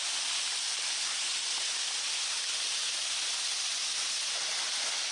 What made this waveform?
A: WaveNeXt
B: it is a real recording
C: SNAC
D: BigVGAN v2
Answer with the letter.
B